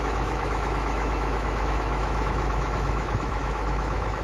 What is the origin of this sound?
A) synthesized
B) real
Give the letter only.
A